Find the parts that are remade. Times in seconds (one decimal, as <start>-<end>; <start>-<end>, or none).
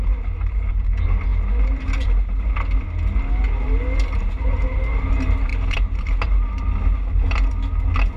none